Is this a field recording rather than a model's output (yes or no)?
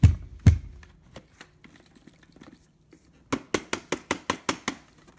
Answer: yes